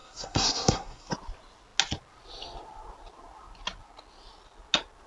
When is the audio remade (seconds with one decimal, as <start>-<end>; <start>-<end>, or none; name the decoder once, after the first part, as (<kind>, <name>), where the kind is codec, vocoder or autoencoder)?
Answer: 0.0-1.1 (codec, SNAC)